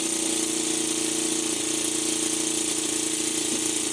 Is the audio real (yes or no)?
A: yes